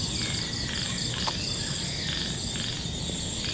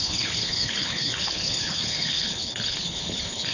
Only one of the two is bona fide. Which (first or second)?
first